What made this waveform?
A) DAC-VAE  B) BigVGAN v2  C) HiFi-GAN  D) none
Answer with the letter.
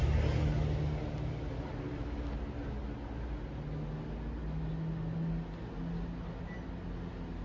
D